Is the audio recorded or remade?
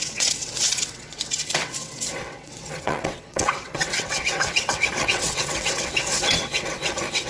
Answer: remade